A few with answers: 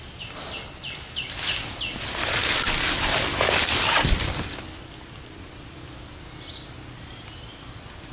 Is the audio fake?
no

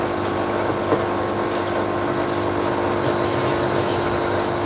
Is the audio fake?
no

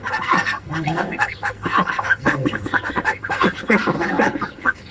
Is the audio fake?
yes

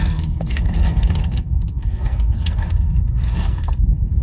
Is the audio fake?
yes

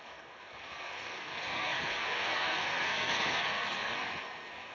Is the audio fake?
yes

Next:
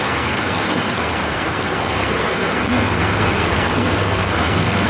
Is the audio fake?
yes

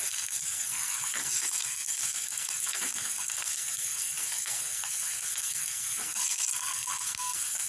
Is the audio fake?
yes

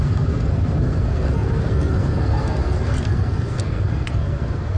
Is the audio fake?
yes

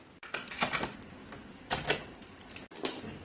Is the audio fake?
no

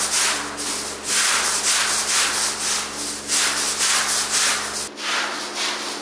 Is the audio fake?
no